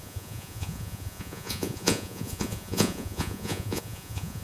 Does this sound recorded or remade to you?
remade